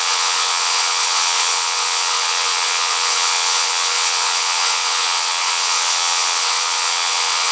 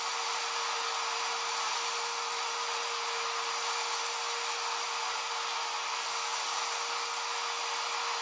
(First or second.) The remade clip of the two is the first